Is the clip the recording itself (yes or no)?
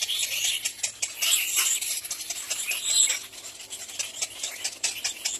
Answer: yes